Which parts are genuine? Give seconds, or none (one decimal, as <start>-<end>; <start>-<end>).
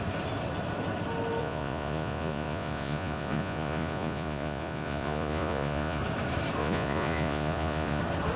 0.0-1.4; 6.0-6.6; 8.0-8.4